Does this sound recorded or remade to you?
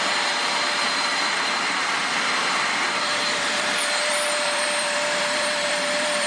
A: remade